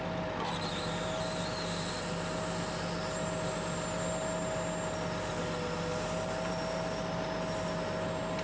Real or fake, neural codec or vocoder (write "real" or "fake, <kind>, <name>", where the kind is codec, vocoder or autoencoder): real